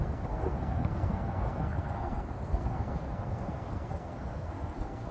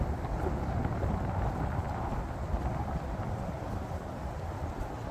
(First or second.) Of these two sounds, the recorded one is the second